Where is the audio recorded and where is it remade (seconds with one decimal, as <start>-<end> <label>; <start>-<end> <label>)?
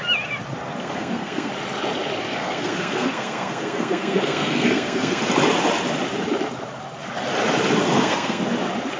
0.0-0.8 recorded; 0.8-1.5 remade; 1.5-2.4 recorded; 2.4-5.2 remade; 5.2-7.8 recorded; 7.8-8.4 remade; 8.4-9.0 recorded